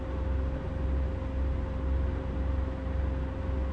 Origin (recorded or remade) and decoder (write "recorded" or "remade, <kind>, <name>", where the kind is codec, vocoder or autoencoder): recorded